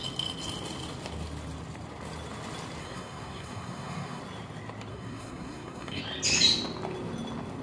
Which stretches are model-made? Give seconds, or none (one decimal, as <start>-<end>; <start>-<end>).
2.8-4.2; 4.9-6.0